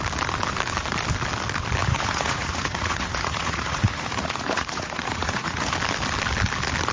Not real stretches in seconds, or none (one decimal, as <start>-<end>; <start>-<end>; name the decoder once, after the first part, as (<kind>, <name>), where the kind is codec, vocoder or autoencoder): 1.8-5.7 (vocoder, Vocos)